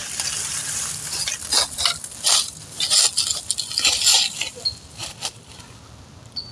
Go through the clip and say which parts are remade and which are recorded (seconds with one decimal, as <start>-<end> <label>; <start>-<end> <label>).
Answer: 0.0-6.5 recorded